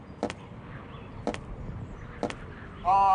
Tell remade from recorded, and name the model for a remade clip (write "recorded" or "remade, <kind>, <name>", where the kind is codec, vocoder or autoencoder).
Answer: recorded